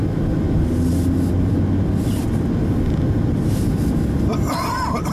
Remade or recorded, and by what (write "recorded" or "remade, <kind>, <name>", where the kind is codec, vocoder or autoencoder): recorded